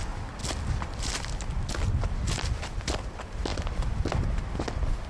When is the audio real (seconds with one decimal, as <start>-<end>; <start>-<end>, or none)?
0.0-5.1